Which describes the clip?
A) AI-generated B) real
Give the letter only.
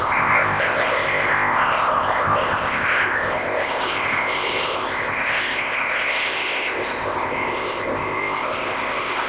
A